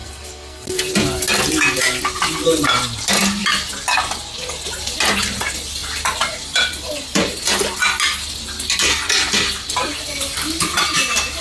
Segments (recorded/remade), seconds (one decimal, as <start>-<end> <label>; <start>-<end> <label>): 0.0-0.9 remade; 0.9-11.4 recorded